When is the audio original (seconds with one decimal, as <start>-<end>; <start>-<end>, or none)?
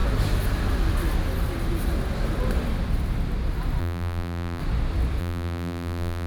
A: 0.0-3.8; 4.6-5.2